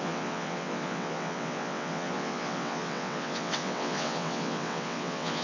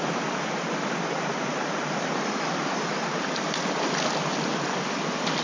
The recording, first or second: second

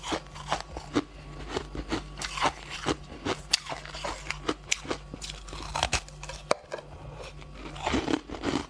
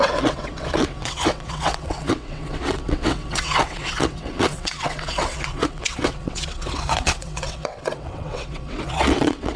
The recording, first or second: first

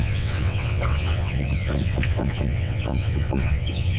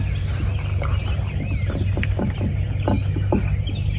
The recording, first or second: second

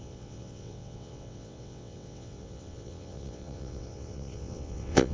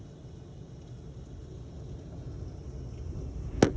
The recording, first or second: second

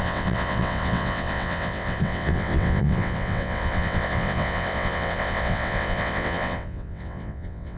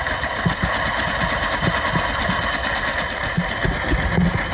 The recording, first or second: second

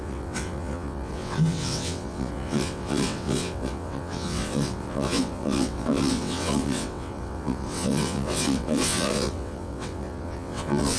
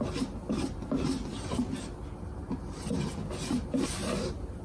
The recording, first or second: second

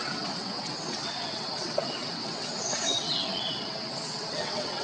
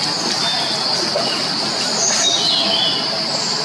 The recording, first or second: second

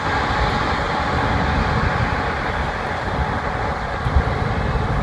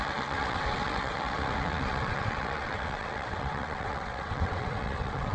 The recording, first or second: first